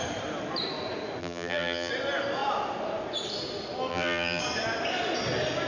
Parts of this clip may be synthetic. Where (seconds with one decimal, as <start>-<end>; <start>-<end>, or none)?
1.2-1.9; 3.9-4.4